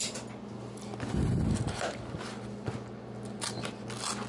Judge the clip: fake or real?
real